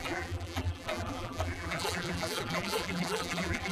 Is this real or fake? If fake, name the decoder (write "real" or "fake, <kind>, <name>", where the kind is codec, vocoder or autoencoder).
fake, vocoder, BigVGAN v2